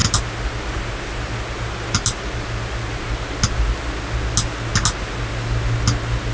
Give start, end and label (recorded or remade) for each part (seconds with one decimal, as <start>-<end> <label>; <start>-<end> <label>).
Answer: 0.0-6.3 recorded